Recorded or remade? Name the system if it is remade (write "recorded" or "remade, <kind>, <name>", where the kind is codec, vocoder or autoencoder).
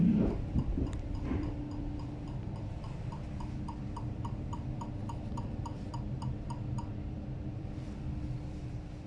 remade, vocoder, BigVGAN v2